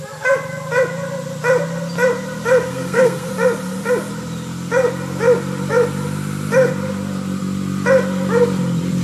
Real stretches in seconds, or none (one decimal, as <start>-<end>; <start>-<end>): 0.0-2.7; 3.3-9.0